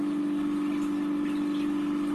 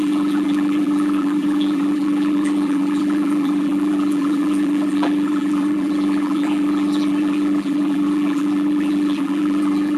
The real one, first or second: first